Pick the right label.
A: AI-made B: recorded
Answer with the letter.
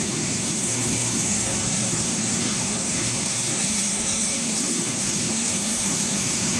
A